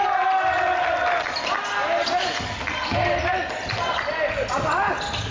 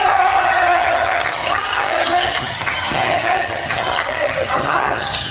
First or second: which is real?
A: first